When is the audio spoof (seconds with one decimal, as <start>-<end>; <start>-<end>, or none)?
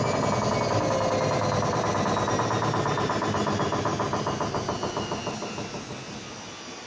none